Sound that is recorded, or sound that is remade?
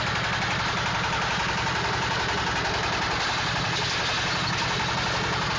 recorded